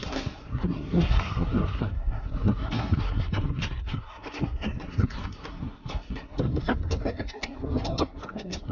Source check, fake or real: fake